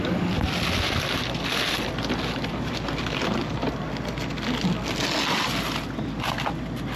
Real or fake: real